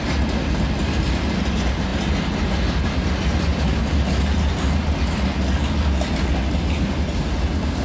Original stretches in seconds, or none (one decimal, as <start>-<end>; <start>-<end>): 0.0-7.8